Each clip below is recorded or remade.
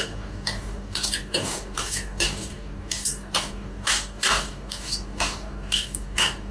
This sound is remade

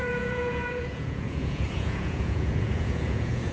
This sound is remade